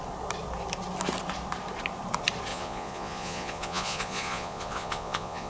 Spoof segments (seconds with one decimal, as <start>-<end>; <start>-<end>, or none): 2.5-5.5